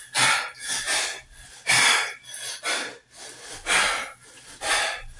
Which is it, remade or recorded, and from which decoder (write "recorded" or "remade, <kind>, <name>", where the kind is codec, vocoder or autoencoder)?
recorded